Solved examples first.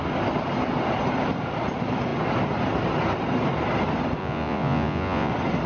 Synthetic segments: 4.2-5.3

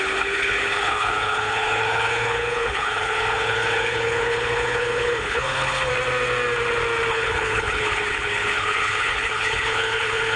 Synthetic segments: 0.0-5.9; 7.1-10.4

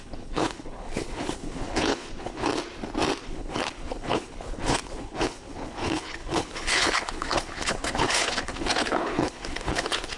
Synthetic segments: 0.0-2.5; 3.2-10.2

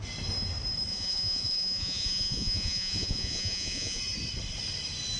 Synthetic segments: 0.9-4.0

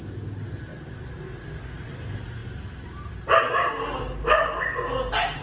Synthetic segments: none

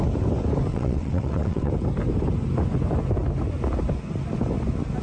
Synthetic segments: 0.7-1.7